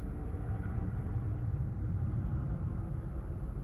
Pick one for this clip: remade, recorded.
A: recorded